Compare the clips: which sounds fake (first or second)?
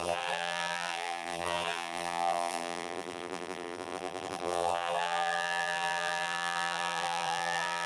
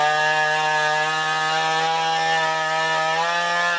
first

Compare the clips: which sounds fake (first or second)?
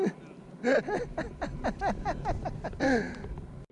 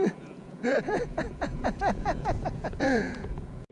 second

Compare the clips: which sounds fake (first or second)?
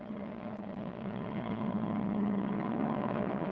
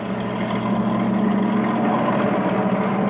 first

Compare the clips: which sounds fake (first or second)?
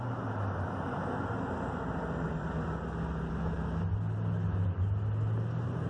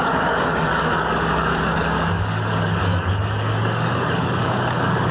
second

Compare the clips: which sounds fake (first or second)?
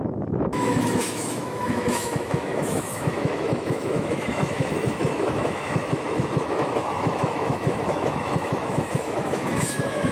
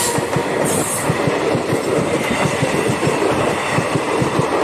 first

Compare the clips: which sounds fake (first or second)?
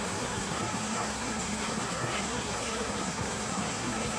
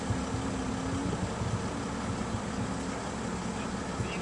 first